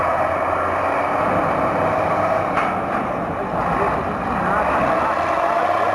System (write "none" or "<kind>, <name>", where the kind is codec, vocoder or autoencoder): none